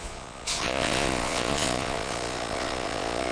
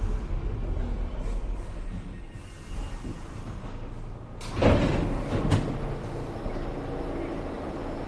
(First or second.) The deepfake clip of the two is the first